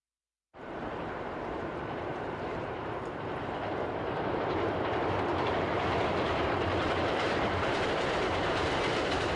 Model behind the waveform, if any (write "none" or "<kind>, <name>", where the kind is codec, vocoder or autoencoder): vocoder, BigVGAN v2